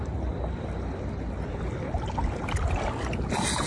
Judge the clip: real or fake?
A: real